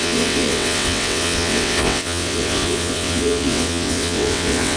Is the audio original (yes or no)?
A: no